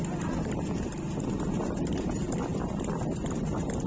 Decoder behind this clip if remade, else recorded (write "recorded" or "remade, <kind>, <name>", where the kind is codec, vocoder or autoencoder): recorded